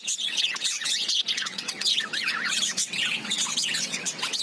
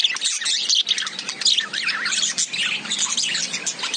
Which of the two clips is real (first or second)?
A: second